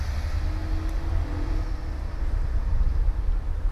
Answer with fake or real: real